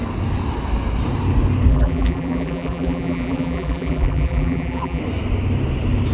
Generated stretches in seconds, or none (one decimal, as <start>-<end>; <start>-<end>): 1.7-5.0